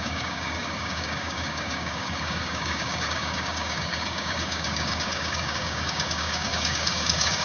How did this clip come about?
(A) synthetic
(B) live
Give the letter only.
A